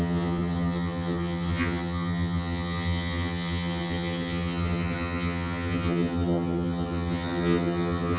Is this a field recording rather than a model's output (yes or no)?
no